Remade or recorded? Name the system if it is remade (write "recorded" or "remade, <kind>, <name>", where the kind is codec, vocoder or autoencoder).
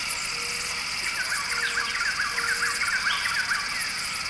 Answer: recorded